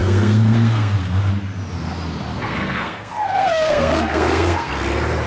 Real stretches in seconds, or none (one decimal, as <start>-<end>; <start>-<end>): 1.3-2.3; 4.7-5.3